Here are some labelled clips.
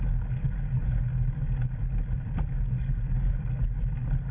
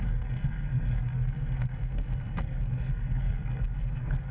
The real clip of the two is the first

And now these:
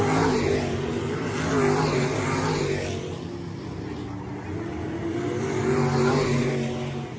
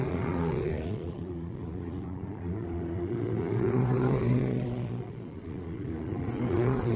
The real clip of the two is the first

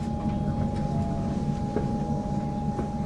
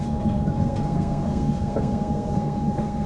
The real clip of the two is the first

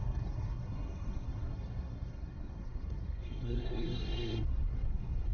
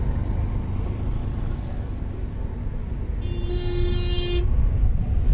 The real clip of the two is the second